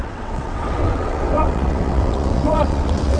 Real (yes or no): no